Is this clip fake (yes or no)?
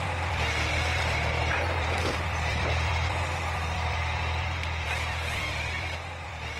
yes